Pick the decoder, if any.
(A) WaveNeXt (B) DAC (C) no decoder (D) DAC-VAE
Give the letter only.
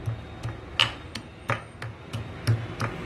C